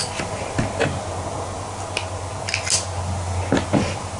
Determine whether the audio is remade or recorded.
recorded